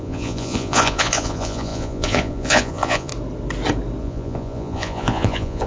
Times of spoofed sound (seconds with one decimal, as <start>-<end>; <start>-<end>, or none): 0.0-3.1; 4.0-5.7